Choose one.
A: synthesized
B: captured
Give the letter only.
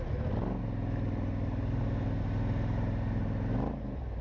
B